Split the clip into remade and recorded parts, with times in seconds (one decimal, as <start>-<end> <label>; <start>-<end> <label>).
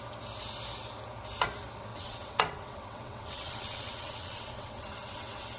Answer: 0.0-1.9 recorded; 1.9-5.6 remade